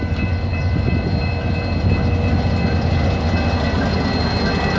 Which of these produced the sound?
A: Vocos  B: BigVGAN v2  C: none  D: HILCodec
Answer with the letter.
C